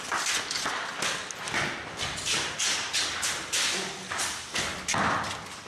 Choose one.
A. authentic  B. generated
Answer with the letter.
A